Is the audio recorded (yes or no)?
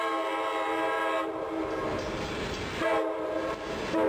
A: yes